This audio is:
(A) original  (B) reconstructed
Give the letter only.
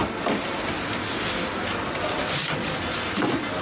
A